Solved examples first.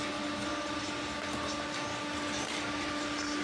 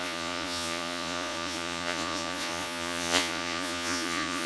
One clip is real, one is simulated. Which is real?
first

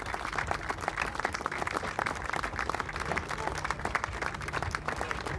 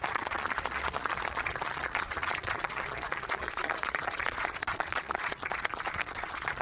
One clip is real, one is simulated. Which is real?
first